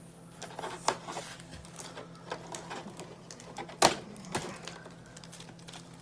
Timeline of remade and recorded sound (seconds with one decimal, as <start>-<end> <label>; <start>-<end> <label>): 0.0-6.0 recorded